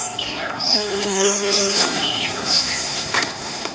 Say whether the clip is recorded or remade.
remade